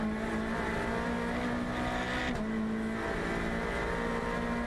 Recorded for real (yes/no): yes